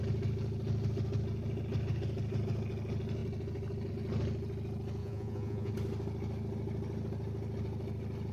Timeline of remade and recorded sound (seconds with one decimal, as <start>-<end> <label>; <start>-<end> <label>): 0.0-5.0 recorded; 5.0-5.7 remade; 5.7-8.3 recorded